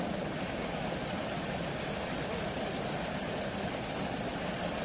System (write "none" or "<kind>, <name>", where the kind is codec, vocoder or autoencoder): none